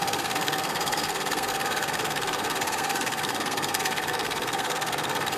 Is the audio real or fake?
fake